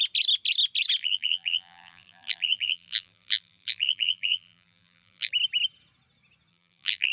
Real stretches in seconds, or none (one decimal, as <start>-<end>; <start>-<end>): 0.0-1.0; 5.3-6.5